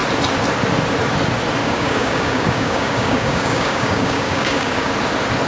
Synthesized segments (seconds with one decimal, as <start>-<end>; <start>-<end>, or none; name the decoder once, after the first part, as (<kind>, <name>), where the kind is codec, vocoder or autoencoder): 1.6-4.9 (codec, DAC)